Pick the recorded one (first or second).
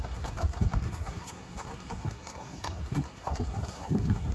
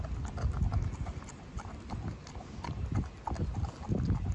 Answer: second